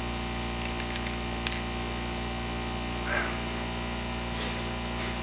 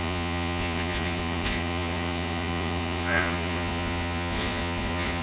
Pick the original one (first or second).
first